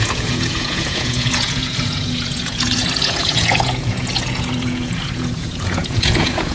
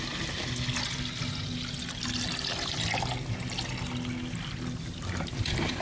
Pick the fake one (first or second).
first